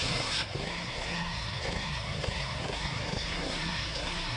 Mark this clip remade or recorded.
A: remade